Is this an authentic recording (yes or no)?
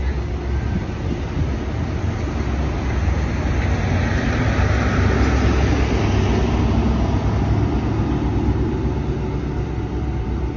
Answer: yes